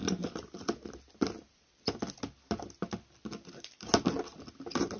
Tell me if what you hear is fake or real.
real